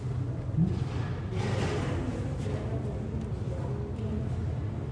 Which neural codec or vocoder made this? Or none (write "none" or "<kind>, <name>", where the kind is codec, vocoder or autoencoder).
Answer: none